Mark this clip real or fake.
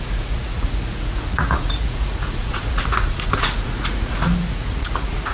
fake